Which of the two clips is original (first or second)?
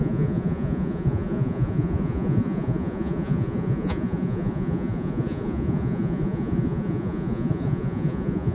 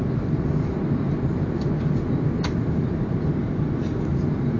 second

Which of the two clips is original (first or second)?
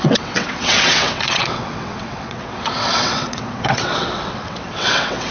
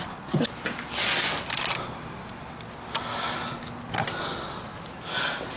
second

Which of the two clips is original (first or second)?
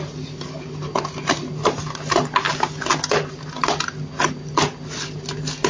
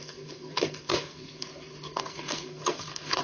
first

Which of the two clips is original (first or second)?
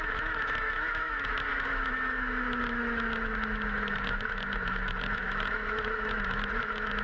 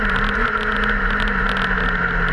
second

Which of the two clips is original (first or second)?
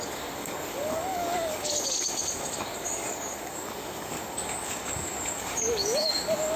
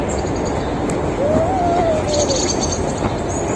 second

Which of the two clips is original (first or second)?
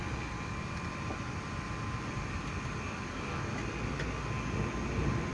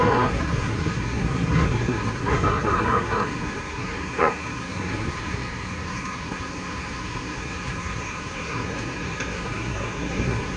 first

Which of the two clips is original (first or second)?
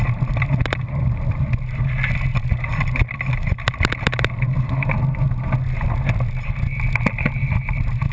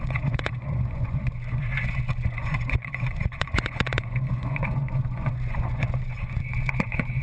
first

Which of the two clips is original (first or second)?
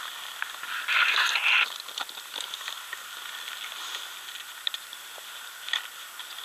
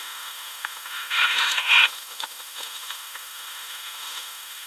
first